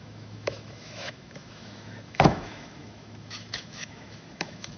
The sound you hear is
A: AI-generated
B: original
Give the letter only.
A